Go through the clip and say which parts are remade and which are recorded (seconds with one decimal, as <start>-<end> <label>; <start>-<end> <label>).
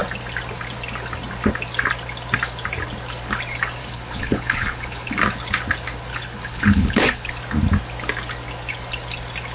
0.0-3.8 recorded; 3.8-5.1 remade; 5.1-6.1 recorded; 6.1-7.3 remade; 7.3-9.5 recorded